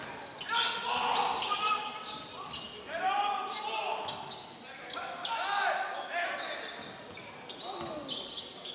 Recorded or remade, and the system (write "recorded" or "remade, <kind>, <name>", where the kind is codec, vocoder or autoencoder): recorded